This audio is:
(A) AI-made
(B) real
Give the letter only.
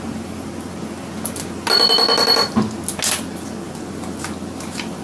B